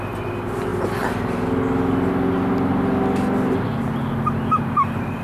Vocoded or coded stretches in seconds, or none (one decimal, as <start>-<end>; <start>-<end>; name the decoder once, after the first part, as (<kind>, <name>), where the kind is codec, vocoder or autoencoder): none